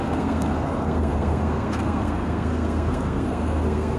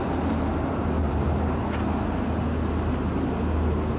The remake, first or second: first